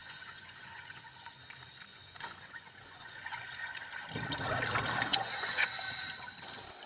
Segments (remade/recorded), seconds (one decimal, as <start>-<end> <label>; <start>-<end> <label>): 0.0-1.4 remade; 1.4-1.9 recorded; 1.9-3.8 remade; 3.8-5.1 recorded; 5.1-5.7 remade; 5.7-6.9 recorded